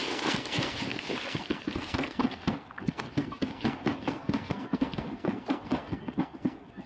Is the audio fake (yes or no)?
yes